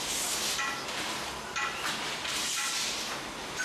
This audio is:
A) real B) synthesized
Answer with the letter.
A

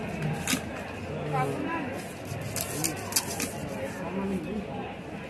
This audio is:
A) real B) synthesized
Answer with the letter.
A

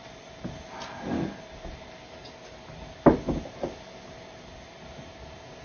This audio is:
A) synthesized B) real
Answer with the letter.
B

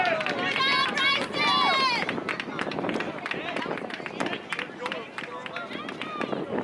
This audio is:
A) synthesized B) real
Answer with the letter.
B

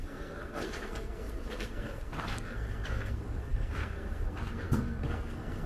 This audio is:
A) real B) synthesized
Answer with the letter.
B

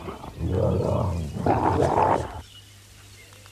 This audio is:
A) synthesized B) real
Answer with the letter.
B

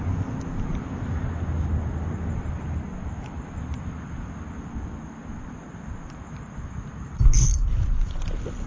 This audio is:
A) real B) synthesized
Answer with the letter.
A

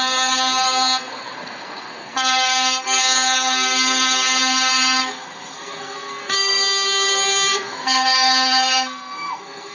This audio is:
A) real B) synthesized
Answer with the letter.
B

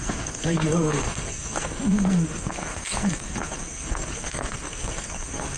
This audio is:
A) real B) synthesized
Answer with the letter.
B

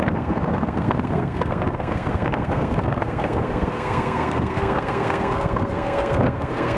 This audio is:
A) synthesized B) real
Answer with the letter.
A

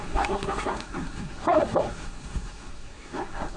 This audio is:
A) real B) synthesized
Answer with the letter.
B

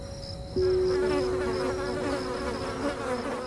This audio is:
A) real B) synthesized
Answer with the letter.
A